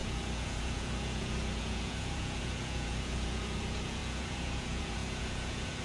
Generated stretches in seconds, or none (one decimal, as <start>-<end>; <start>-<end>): 0.0-5.8